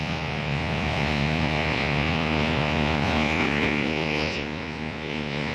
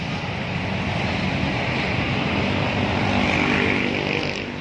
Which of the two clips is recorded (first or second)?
second